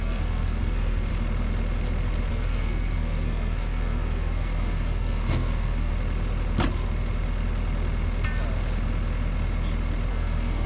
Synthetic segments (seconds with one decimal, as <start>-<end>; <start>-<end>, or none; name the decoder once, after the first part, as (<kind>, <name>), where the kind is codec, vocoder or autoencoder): 0.0-1.1 (codec, SNAC); 2.3-5.9; 10.1-10.7